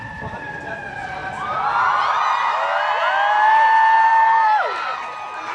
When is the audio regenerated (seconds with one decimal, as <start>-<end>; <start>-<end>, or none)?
none